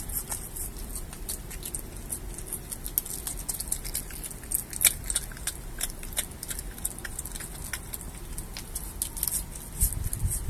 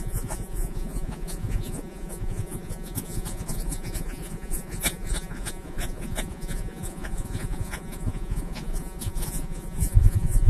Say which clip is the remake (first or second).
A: second